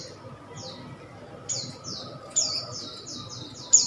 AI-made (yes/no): no